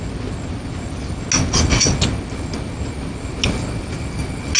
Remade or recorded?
recorded